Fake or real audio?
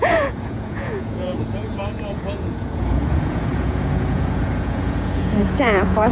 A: fake